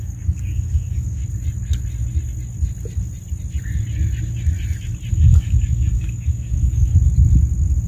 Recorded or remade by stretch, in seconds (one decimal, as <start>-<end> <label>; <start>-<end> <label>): 0.0-1.2 remade; 1.2-5.1 recorded; 5.1-6.9 remade; 6.9-7.9 recorded

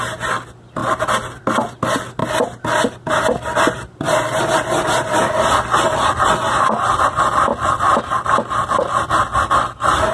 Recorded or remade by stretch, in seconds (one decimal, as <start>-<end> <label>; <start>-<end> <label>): 0.0-10.1 recorded

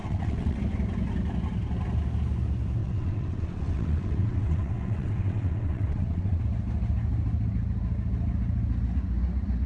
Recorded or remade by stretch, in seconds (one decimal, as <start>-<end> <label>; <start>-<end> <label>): 0.0-0.6 remade; 0.6-2.8 recorded; 2.8-6.4 remade; 6.4-9.7 recorded